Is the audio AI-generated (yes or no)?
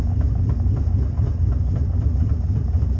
no